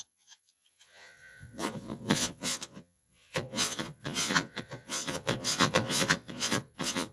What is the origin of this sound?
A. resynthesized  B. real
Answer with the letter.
A